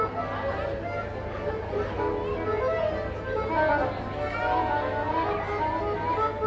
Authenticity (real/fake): real